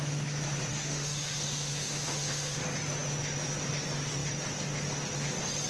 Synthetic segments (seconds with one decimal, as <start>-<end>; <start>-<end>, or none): 0.7-2.6